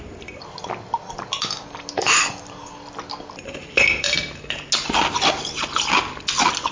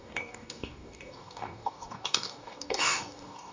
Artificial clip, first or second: second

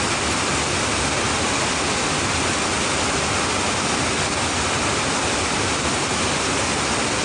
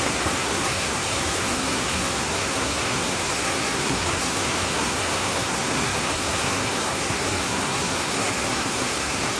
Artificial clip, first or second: second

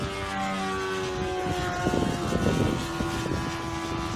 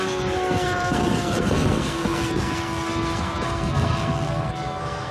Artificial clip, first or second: second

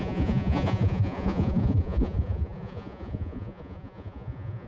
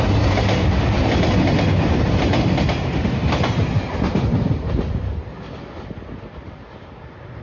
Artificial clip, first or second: first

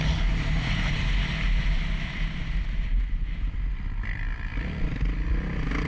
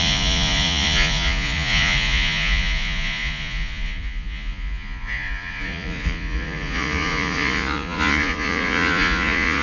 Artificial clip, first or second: second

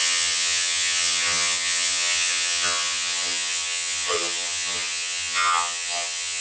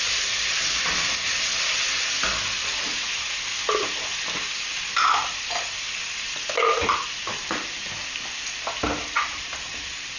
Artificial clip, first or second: first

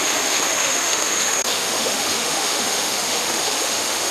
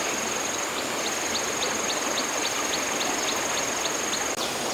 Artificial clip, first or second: first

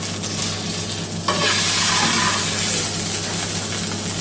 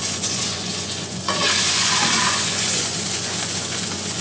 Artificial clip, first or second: second